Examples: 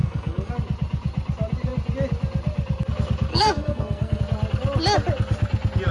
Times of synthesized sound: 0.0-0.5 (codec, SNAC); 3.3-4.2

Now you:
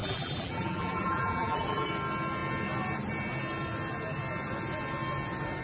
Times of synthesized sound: 0.0-1.9 (vocoder, BigVGAN v2)

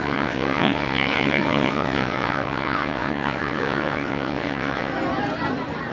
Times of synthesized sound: 0.0-4.9 (vocoder, WaveNeXt)